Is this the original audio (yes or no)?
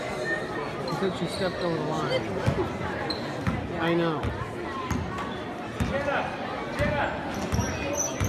yes